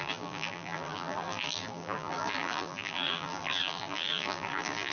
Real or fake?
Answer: fake